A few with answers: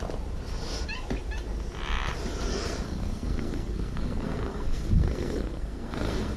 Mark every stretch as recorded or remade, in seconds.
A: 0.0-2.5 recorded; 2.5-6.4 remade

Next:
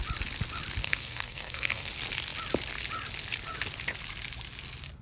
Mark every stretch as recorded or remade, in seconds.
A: 0.0-0.8 recorded; 0.8-1.9 remade; 1.9-5.0 recorded

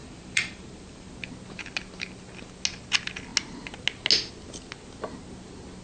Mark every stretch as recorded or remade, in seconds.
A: 0.0-1.1 remade; 1.1-5.8 recorded